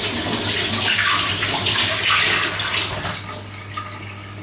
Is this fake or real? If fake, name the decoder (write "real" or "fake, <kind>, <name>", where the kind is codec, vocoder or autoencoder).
real